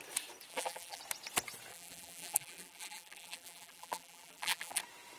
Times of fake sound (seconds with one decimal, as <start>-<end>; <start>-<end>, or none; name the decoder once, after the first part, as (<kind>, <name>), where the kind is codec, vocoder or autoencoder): 0.5-1.0 (vocoder, BigVGAN v2); 1.7-4.8